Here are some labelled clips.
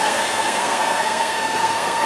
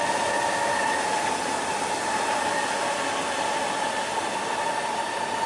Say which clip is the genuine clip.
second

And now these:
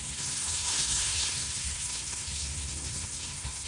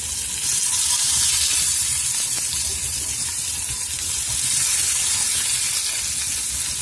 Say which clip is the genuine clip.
second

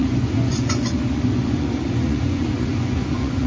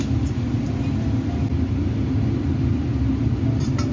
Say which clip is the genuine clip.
second